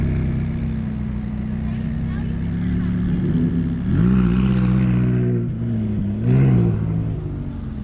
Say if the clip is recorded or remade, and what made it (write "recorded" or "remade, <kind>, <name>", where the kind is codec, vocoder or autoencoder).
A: recorded